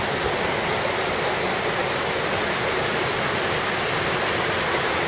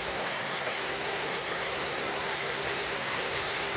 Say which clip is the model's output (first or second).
second